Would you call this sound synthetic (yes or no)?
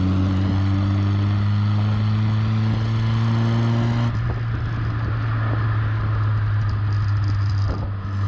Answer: no